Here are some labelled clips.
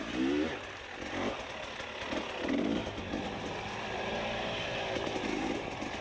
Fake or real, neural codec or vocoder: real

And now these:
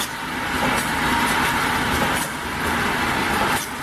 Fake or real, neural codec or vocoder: real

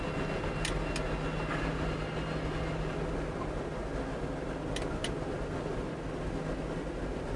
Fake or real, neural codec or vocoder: real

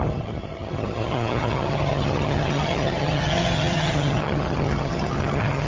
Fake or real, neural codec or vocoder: fake, vocoder, HiFi-GAN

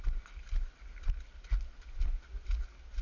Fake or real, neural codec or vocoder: real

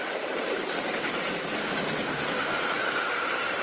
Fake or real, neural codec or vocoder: fake, vocoder, BigVGAN v2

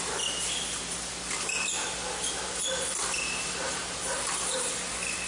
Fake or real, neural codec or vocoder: real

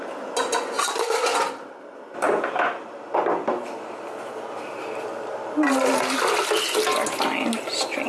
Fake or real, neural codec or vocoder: real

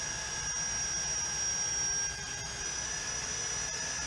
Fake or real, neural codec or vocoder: real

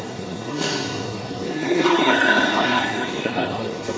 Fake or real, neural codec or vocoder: fake, codec, SNAC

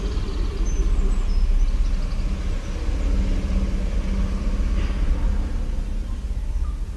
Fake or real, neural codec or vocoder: real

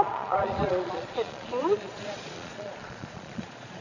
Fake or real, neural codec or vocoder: fake, vocoder, Vocos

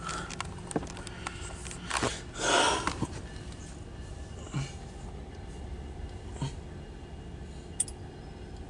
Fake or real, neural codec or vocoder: real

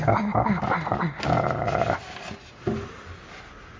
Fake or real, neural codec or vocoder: real